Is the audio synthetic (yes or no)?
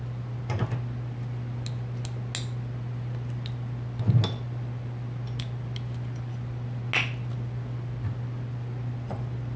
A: no